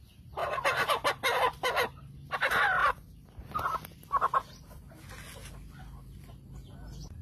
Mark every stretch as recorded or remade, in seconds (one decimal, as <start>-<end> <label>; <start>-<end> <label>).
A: 0.0-2.8 recorded; 2.8-4.9 remade; 4.9-7.2 recorded